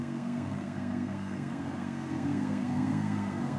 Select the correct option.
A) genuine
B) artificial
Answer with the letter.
B